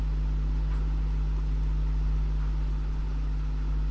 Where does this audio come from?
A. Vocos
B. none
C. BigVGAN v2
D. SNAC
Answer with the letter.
B